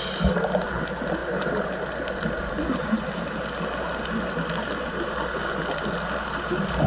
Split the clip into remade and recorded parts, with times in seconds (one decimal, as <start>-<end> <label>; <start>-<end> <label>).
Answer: 0.0-6.9 recorded